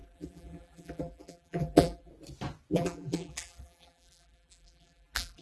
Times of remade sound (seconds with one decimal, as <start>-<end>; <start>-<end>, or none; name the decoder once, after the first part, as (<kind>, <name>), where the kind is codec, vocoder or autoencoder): 0.0-2.1 (vocoder, BigVGAN v2); 2.7-5.4